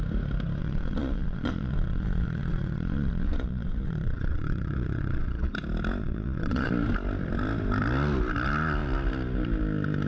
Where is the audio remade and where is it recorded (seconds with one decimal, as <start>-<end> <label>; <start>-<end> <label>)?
0.0-0.6 recorded; 0.6-5.5 remade; 5.5-6.0 recorded; 6.0-6.7 remade; 6.7-10.1 recorded